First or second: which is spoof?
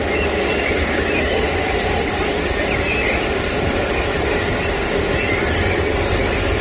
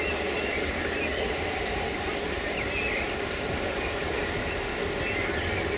first